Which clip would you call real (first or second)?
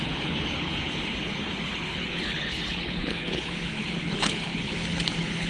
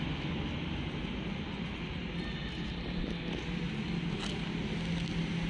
second